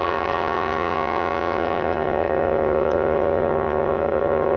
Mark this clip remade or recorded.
remade